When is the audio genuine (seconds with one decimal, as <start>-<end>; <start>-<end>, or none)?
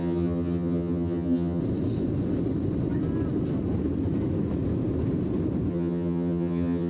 1.6-5.7